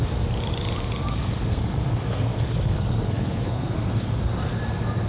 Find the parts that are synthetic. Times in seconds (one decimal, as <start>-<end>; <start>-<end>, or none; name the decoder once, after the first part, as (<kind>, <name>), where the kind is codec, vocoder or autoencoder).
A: 1.1-4.2 (codec, SNAC)